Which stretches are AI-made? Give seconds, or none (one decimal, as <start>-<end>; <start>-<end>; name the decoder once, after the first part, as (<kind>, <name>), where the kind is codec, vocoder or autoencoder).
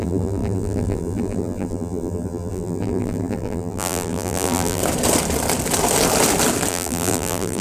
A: 0.0-4.8 (vocoder, BigVGAN v2); 6.7-7.6